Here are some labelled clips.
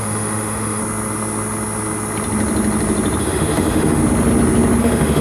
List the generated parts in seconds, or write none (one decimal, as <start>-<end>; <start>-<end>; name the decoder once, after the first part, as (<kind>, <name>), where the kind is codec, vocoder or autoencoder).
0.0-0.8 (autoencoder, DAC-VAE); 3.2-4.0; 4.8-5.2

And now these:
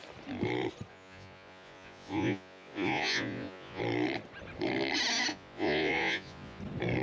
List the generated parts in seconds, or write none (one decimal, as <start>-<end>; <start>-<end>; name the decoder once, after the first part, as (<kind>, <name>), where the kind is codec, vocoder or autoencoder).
0.9-3.8 (vocoder, Vocos); 5.3-6.6

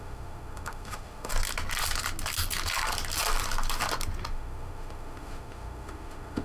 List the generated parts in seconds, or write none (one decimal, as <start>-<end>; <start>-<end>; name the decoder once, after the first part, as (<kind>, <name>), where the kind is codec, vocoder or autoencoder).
0.0-1.3 (autoencoder, DAC-VAE); 4.3-6.4

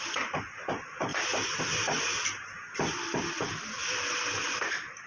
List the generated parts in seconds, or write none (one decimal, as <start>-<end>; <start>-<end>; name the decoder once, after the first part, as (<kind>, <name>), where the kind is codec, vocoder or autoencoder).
none